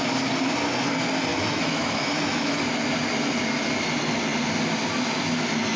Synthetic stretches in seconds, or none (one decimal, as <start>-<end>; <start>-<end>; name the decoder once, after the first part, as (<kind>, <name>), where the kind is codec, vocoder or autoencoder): 1.3-2.6 (autoencoder, DAC-VAE)